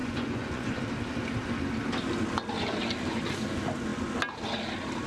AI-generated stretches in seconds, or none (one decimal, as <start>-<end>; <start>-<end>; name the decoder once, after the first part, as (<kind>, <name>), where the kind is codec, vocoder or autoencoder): 0.0-0.8 (vocoder, Vocos)